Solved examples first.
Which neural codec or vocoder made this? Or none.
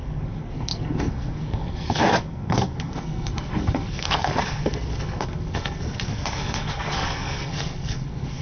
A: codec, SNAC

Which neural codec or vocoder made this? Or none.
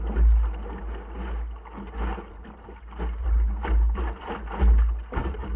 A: none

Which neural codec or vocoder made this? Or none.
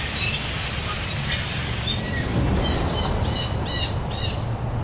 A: none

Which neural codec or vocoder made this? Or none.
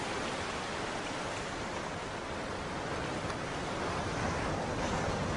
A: vocoder, BigVGAN v2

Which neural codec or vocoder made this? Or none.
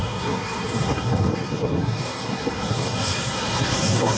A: codec, SNAC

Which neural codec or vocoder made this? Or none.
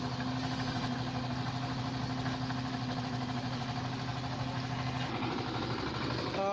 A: none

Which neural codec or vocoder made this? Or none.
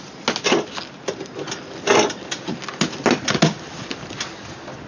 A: none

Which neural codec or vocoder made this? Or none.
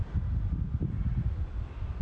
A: none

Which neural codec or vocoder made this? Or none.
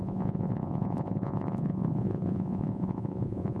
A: vocoder, Vocos